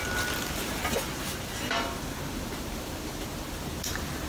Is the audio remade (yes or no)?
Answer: no